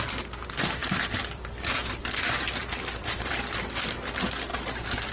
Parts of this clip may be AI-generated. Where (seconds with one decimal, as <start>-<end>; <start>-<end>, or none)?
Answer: 0.8-2.0; 2.6-3.3